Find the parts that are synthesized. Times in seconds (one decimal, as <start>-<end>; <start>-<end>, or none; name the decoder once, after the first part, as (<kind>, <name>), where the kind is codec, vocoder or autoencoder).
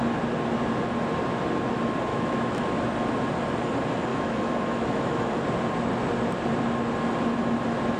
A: 2.1-2.6 (autoencoder, DAC-VAE); 4.1-5.3